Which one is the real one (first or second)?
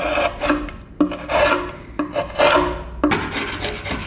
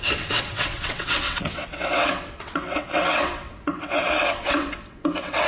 first